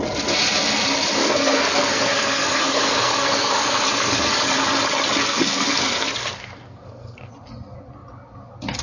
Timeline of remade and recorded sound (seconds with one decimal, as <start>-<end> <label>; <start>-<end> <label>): 0.0-1.2 recorded; 1.2-4.3 remade; 4.3-5.2 recorded; 5.2-7.3 remade; 7.3-8.8 recorded